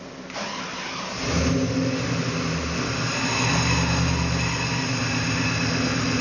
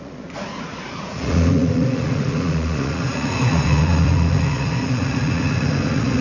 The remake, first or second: second